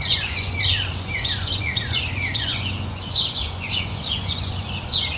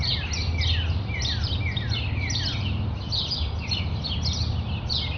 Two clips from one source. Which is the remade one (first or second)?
first